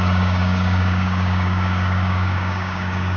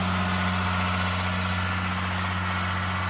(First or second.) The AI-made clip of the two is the first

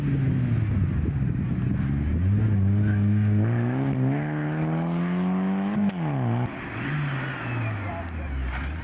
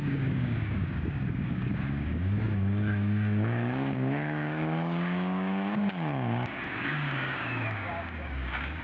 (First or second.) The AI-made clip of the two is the second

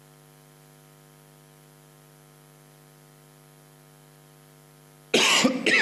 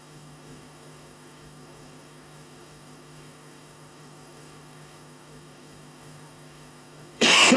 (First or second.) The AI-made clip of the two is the second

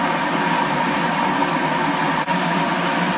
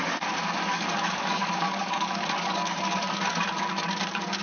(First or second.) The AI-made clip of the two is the second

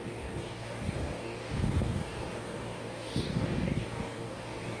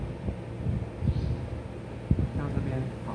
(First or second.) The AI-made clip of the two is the first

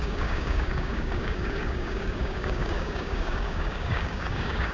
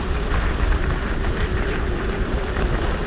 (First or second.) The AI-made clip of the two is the first